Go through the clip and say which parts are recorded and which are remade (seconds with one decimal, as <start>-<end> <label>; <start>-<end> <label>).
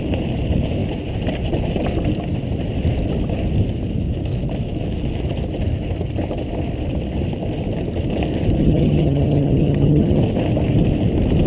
0.0-8.6 recorded; 8.6-10.2 remade; 10.2-11.5 recorded